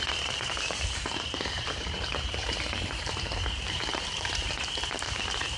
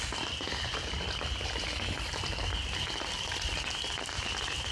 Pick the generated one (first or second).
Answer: first